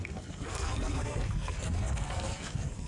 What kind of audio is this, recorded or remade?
remade